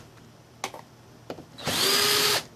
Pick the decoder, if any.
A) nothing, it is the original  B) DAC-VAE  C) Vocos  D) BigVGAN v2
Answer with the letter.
A